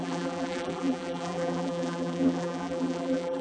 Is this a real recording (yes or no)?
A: no